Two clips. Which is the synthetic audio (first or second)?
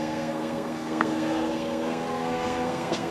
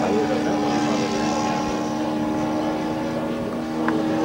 first